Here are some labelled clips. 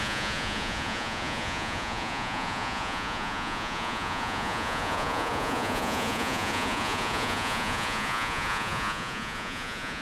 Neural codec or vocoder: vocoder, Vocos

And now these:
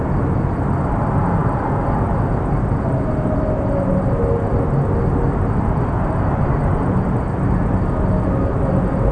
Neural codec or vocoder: none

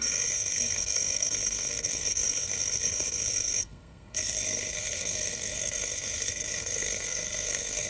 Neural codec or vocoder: codec, SNAC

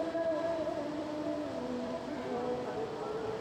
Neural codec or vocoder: vocoder, BigVGAN v2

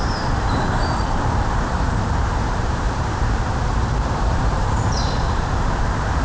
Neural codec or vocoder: vocoder, BigVGAN v2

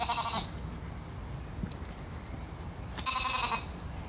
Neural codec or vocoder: none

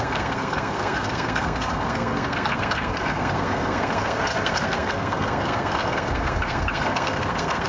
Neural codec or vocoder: codec, SNAC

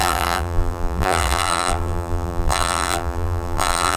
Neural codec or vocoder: vocoder, BigVGAN v2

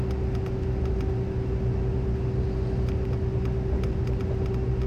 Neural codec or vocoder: none